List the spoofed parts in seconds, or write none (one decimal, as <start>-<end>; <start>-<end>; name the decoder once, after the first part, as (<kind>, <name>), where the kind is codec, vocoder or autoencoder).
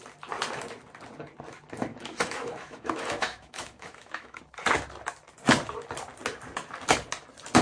1.9-4.4 (autoencoder, DAC-VAE)